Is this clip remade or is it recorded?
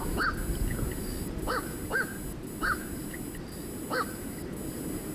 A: recorded